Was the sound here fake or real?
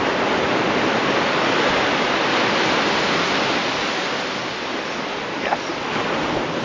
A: real